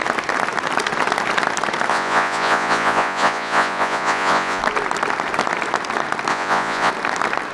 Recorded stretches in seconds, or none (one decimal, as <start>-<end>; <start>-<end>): 0.0-1.9; 4.6-6.3; 6.9-7.5